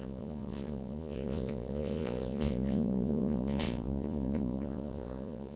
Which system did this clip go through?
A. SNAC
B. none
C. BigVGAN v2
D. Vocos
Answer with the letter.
D